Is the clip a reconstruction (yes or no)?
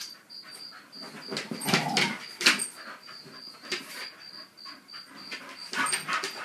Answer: no